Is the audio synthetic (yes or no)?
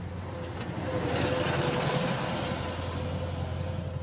no